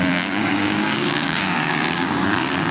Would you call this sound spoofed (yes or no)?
yes